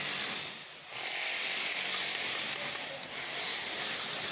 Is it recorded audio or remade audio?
recorded